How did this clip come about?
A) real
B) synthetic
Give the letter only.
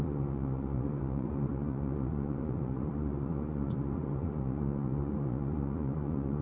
B